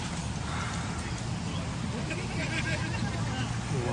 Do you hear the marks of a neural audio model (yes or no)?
no